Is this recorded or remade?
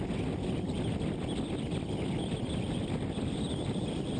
recorded